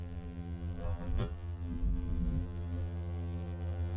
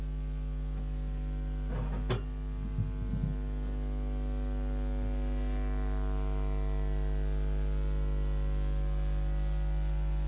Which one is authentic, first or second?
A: second